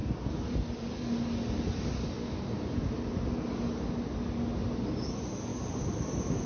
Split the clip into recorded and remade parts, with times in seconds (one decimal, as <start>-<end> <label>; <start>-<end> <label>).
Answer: 0.0-5.5 recorded; 5.5-6.5 remade